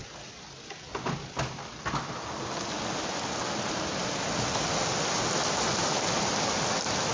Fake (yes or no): no